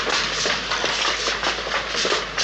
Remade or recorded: recorded